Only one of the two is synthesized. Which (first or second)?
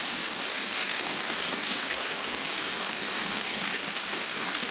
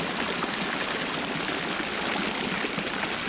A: first